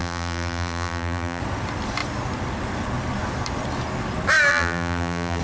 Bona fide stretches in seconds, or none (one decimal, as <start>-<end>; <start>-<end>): 1.4-4.5

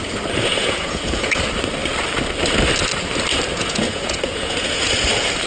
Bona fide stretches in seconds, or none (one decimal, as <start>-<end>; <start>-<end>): 0.0-0.4; 1.4-3.5; 5.1-5.5

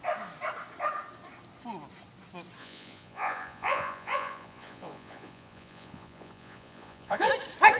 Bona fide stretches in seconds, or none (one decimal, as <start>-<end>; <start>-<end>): 0.0-2.6; 7.3-7.8

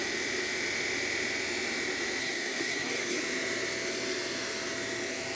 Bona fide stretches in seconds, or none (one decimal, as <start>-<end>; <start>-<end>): 0.0-2.2; 3.2-5.4

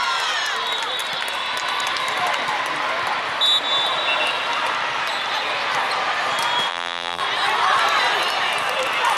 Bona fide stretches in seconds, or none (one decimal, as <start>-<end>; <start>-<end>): 0.0-6.7; 7.2-9.2

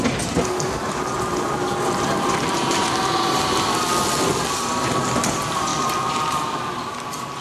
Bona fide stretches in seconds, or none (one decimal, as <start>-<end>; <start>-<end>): 0.0-4.4; 5.7-6.9